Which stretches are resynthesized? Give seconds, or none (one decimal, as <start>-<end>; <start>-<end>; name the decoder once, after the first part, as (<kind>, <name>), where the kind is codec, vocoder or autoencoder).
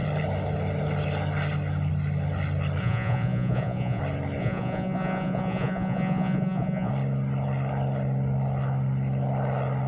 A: 2.8-4.0 (vocoder, Vocos); 4.4-6.9